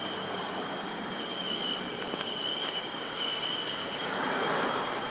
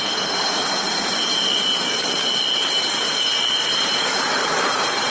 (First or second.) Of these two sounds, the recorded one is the second